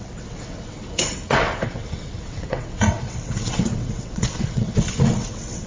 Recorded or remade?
remade